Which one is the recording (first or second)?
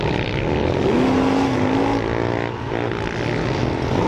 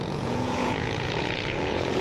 first